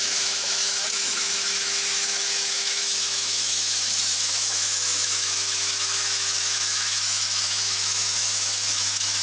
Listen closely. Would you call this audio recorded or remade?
remade